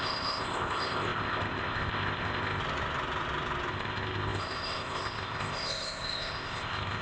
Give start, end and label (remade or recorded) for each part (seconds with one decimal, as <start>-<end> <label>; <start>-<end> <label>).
0.0-2.6 remade; 2.6-3.7 recorded; 3.7-7.0 remade